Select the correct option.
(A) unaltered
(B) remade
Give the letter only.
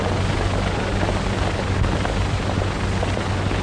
A